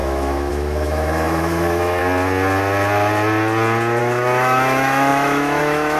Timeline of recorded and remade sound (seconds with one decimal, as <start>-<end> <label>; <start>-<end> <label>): 0.0-2.0 remade; 2.0-4.0 recorded; 4.0-6.0 remade